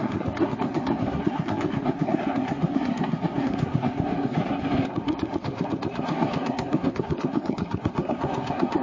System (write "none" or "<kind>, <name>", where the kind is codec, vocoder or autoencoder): codec, SNAC